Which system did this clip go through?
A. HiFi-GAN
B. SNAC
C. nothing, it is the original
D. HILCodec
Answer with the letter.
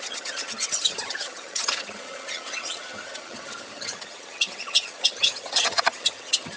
A